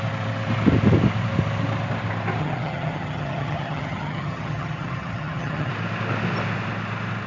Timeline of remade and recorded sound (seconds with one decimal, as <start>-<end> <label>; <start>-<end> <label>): 0.0-2.4 recorded; 2.4-5.7 remade; 5.7-7.3 recorded